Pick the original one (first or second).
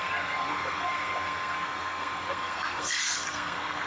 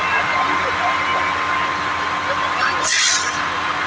second